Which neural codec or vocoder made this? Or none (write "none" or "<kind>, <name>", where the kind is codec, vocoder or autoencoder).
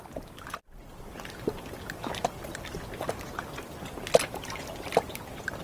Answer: none